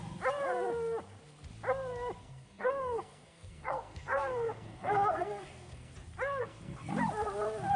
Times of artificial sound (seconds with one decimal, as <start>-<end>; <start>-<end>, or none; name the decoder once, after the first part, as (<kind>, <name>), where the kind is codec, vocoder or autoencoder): 2.2-5.9 (codec, SNAC); 6.4-6.9